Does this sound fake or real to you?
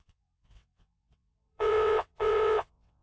fake